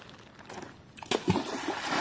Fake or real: real